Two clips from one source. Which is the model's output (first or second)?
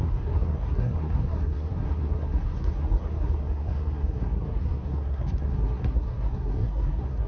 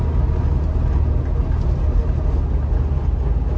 first